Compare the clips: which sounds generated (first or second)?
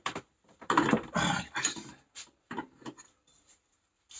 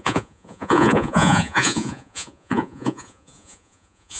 second